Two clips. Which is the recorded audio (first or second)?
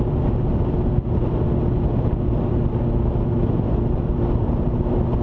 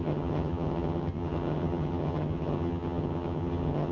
first